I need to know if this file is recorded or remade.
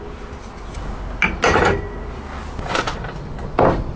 recorded